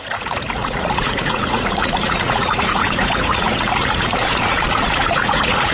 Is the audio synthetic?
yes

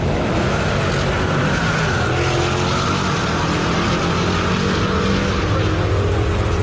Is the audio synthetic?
no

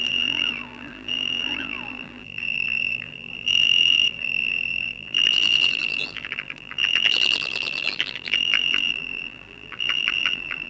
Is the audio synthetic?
yes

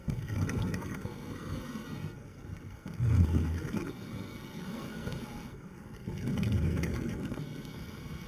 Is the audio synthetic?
yes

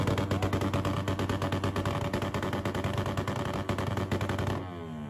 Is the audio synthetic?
no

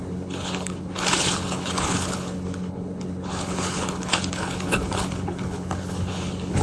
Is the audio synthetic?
yes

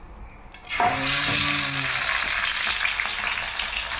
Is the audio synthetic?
no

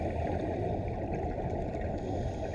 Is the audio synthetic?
no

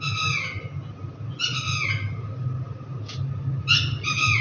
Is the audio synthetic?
no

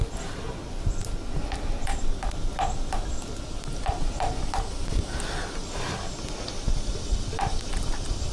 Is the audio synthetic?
no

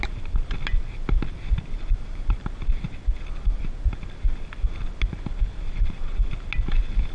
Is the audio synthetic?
no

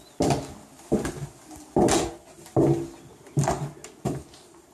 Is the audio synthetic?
no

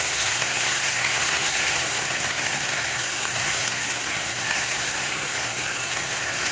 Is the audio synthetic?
yes